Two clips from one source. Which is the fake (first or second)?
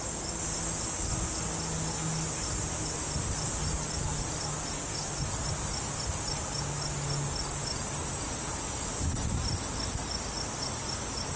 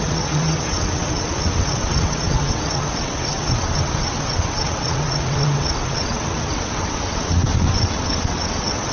second